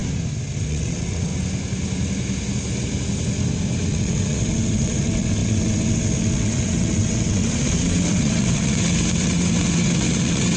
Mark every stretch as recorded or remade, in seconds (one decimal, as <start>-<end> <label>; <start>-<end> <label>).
0.0-0.7 recorded; 0.7-1.3 remade; 1.3-3.9 recorded; 3.9-10.6 remade